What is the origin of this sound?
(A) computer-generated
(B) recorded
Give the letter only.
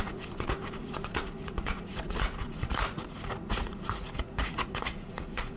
A